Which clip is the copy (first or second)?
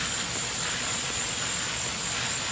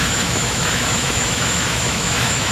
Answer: second